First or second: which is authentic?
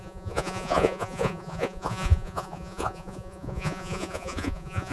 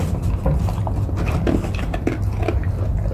second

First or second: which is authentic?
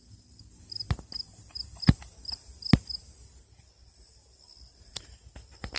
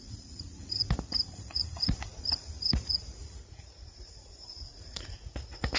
first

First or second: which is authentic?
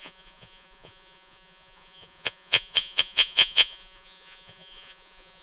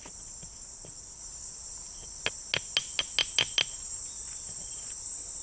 second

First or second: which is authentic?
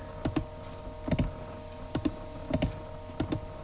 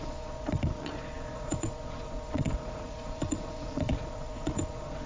first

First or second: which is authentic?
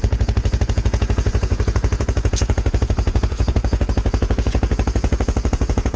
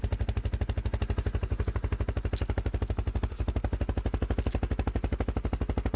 second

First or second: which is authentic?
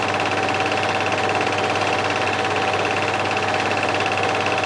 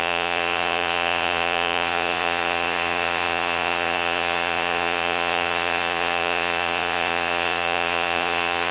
first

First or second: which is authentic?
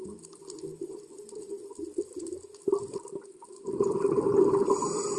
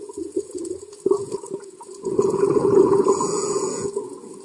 first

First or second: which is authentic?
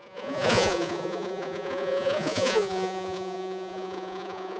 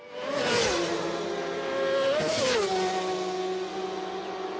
second